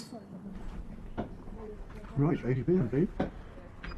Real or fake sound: real